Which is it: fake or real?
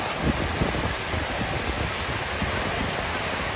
real